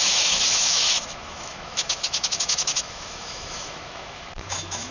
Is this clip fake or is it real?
fake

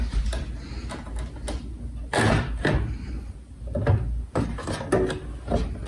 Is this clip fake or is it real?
real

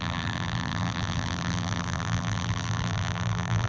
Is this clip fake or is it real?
fake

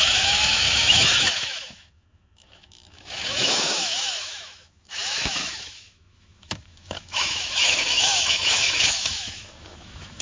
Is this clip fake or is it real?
fake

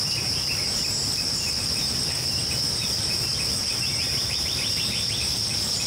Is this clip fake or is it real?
fake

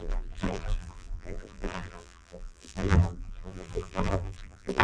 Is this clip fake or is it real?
fake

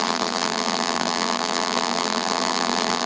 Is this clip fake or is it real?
fake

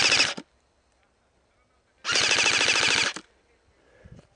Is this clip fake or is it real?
real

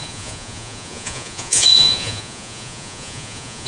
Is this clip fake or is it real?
fake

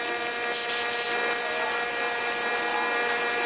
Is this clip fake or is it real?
real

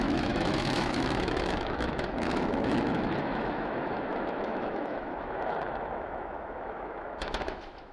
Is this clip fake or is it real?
fake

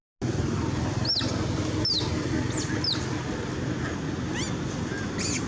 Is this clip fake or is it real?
real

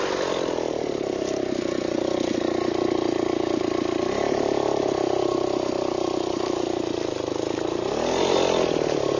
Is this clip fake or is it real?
real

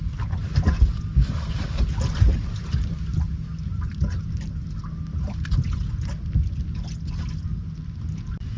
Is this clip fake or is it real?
real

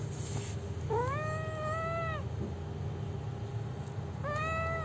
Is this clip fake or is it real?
real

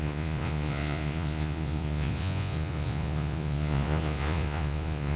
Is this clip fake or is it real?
fake